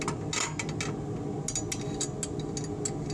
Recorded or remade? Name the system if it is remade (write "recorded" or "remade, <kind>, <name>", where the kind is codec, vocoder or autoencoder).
recorded